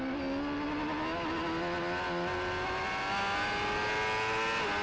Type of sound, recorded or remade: recorded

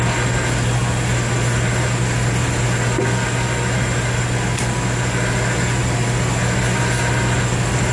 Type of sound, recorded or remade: recorded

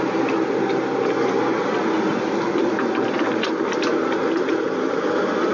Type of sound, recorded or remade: recorded